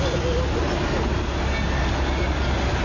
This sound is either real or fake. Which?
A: real